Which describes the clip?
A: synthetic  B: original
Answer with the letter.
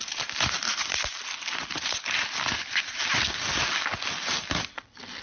B